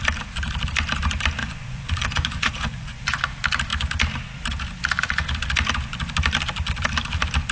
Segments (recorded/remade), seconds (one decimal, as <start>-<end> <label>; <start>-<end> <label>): 0.0-1.4 recorded; 1.4-3.2 remade; 3.2-7.5 recorded